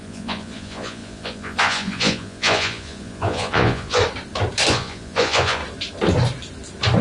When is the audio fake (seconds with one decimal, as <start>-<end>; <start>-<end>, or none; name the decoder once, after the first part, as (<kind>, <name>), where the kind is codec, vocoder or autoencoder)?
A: 0.0-4.0 (vocoder, Vocos); 4.7-5.6